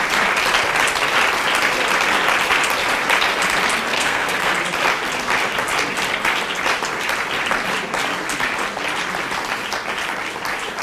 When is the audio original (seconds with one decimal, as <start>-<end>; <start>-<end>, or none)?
0.0-3.9; 4.5-10.8